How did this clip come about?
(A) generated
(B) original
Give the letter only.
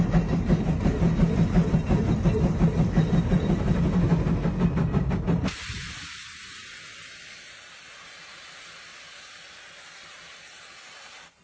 B